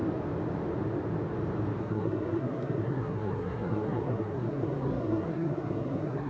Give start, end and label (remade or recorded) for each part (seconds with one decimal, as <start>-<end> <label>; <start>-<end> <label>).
0.0-1.8 recorded; 1.8-6.3 remade